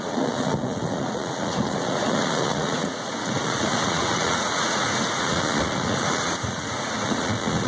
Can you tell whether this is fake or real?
fake